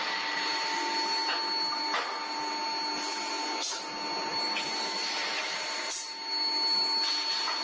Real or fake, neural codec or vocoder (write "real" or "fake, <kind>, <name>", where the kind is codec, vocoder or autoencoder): real